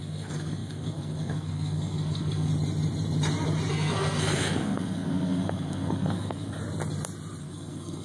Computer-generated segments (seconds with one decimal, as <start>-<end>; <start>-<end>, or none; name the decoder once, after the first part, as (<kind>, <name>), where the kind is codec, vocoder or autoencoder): 0.0-2.5 (codec, SNAC); 3.7-6.6; 7.4-8.0